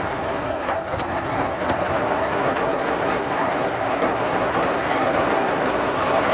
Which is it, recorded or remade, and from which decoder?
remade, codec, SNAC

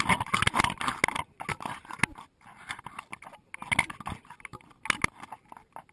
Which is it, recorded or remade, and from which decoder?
recorded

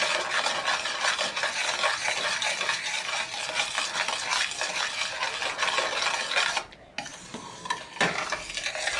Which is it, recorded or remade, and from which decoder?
recorded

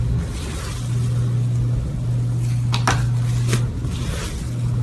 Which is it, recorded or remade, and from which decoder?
recorded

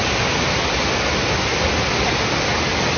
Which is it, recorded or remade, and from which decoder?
recorded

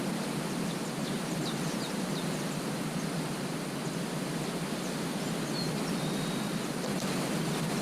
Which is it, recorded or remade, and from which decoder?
recorded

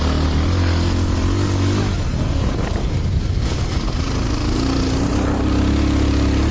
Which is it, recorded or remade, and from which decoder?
recorded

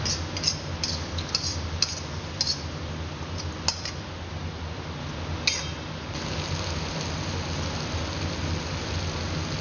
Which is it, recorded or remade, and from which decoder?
recorded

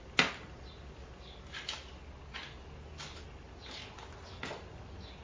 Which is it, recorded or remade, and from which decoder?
recorded